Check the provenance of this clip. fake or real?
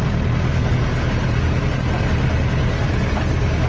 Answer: real